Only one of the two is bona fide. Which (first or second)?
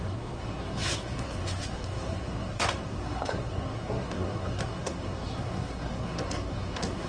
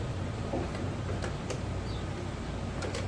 second